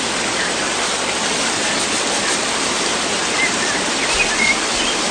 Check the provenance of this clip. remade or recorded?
remade